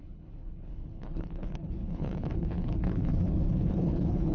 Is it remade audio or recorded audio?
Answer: remade